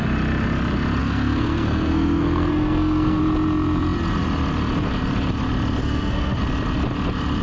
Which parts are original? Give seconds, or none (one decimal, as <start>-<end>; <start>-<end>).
0.0-1.0; 3.2-5.8; 6.4-7.4